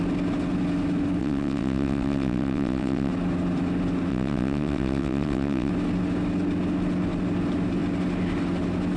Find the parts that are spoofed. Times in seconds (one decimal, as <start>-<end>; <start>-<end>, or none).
1.2-3.1; 4.1-5.7